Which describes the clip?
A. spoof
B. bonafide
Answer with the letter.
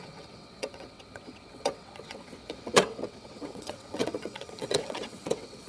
A